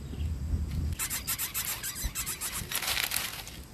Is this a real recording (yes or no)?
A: yes